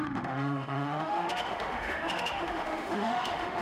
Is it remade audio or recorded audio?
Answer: remade